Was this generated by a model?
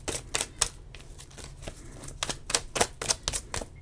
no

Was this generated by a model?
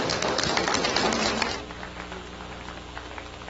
no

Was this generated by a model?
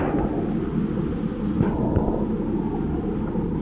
no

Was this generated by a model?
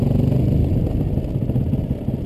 no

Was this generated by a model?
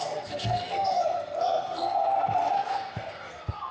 yes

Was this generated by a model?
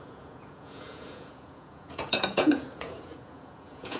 yes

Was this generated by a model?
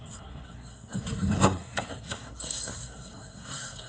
yes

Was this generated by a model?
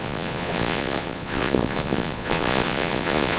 yes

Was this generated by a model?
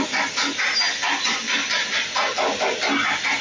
no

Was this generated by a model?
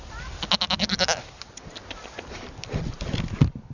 no